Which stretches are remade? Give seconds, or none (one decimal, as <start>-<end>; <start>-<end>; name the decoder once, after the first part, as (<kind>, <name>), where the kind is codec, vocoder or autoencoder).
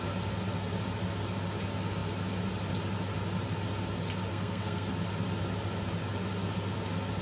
4.3-4.9 (codec, SNAC)